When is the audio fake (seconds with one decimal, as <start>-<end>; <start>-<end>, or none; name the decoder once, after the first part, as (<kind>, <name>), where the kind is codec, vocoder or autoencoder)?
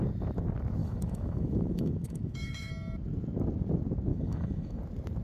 0.8-2.7 (autoencoder, DAC-VAE); 4.1-4.8